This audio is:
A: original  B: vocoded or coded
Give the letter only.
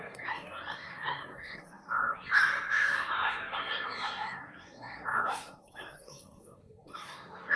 B